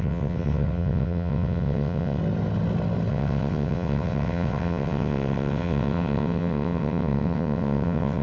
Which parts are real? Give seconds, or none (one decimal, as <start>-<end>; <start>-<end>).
2.2-3.1